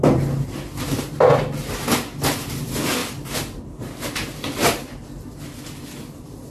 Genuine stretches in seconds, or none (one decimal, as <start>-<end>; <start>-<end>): 0.0-6.5